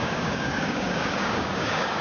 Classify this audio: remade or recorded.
remade